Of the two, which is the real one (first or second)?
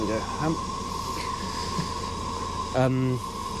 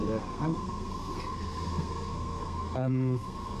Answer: first